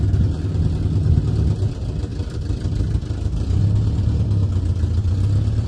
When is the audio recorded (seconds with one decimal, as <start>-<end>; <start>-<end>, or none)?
0.0-2.1; 3.6-5.7